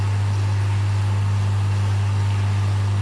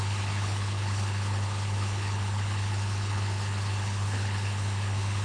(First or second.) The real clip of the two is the first